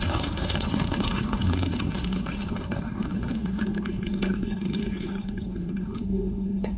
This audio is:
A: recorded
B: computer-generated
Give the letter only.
B